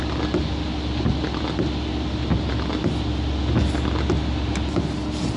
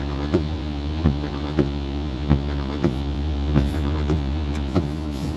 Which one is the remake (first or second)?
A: second